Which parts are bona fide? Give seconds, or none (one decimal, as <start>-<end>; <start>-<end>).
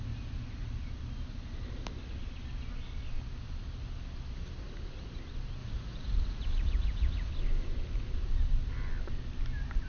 0.0-5.6; 7.3-9.9